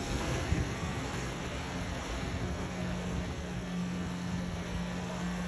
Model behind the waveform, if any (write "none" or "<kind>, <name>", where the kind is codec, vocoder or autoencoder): codec, SNAC